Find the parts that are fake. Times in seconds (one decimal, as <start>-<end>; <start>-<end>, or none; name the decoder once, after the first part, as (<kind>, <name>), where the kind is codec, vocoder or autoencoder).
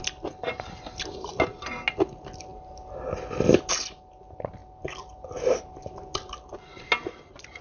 none